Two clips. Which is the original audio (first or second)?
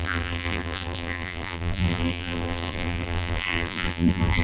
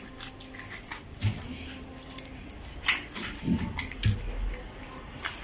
second